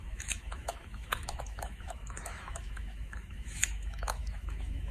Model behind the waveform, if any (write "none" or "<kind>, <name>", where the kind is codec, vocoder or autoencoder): autoencoder, DAC-VAE